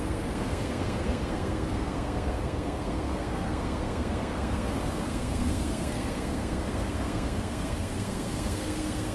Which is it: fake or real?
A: fake